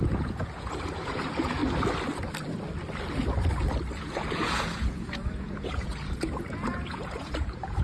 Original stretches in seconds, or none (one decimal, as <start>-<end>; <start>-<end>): 1.6-4.0